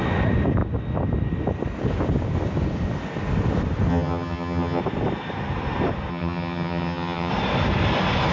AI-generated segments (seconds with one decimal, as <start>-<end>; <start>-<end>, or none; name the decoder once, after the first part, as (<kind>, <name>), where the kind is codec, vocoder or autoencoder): 3.9-4.8 (vocoder, HiFi-GAN); 6.1-7.3

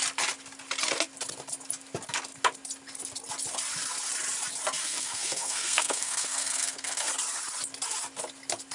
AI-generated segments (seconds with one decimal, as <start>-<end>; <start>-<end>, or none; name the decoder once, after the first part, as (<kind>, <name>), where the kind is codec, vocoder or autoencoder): 4.8-7.1 (codec, SNAC)